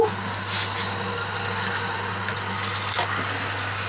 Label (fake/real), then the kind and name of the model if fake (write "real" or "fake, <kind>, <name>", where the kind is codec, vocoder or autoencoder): real